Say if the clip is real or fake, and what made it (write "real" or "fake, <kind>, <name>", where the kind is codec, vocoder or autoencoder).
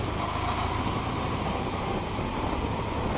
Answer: real